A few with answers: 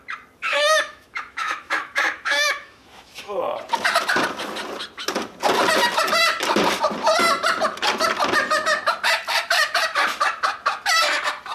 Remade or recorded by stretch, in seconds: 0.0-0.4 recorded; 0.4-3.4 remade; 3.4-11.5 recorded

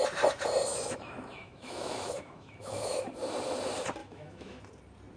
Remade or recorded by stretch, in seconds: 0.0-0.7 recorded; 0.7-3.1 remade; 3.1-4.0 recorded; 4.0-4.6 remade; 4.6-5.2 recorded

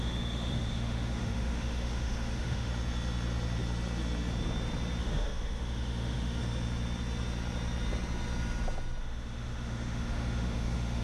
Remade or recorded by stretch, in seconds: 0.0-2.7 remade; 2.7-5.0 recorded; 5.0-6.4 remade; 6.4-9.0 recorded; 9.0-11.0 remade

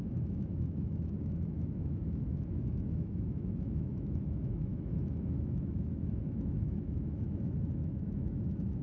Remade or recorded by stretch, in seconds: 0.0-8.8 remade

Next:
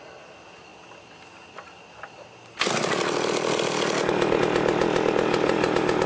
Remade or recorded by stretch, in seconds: 0.0-6.1 recorded

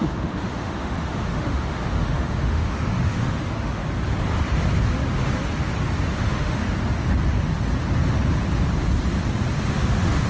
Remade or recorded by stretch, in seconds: 0.0-3.8 remade; 3.8-6.1 recorded; 6.1-6.6 remade; 6.6-9.7 recorded; 9.7-10.3 remade

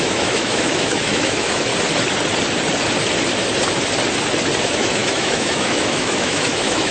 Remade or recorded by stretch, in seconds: 0.0-1.7 remade; 1.7-4.6 recorded; 4.6-6.9 remade

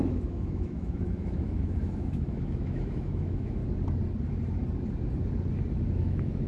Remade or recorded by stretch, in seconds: 0.0-3.6 remade; 3.6-5.8 recorded; 5.8-6.5 remade